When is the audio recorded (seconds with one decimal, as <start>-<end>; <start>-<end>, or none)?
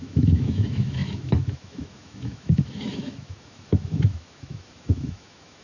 none